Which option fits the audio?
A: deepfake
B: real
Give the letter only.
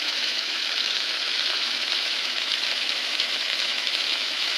A